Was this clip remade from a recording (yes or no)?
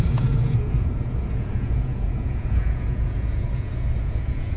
yes